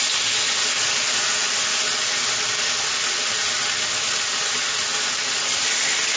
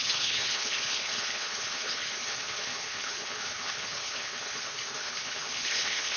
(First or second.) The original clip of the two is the first